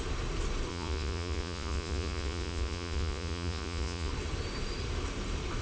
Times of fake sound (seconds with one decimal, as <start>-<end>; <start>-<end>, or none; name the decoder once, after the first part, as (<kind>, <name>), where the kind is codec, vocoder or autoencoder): 0.7-4.1 (vocoder, Vocos)